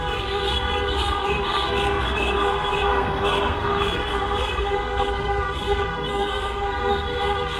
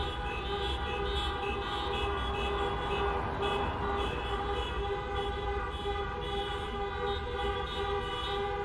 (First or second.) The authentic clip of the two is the second